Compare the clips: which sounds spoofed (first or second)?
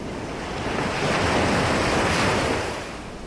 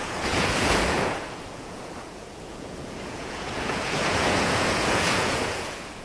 second